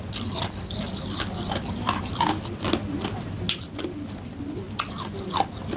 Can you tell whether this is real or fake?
real